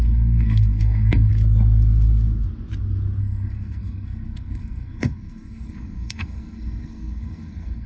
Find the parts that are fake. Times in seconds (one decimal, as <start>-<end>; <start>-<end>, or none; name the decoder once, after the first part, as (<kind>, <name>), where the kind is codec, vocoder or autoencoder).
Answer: 0.0-1.3 (codec, SNAC); 3.2-7.9